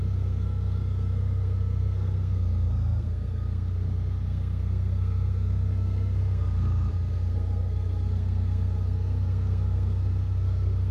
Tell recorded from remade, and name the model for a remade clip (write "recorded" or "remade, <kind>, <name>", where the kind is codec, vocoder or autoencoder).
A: remade, codec, SNAC